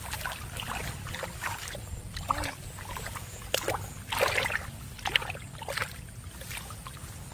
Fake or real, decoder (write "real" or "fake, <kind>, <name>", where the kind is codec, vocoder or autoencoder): real